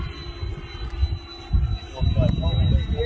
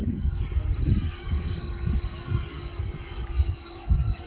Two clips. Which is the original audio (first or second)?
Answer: first